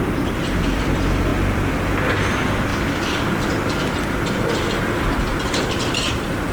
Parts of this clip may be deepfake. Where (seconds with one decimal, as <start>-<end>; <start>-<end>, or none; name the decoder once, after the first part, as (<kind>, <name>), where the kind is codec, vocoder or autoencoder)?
0.0-6.5 (vocoder, BigVGAN v2)